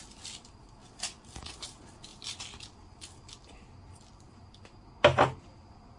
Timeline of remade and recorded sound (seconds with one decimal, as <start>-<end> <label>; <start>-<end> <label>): 0.0-6.0 recorded